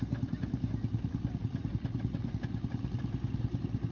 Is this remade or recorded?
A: remade